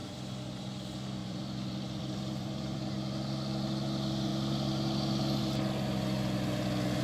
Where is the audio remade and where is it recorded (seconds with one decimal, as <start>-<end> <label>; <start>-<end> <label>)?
0.0-0.6 remade; 0.6-1.2 recorded; 1.2-2.9 remade; 2.9-7.0 recorded